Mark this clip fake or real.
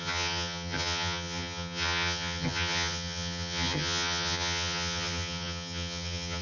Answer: fake